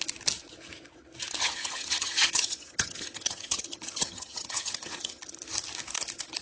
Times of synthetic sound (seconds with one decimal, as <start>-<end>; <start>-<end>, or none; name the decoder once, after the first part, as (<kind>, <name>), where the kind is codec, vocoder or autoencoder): 1.4-5.2 (vocoder, HiFi-GAN)